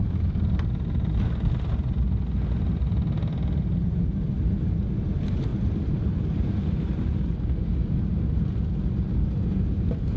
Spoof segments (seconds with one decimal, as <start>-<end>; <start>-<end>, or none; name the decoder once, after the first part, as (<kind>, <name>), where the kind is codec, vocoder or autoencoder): 5.5-7.0 (vocoder, BigVGAN v2)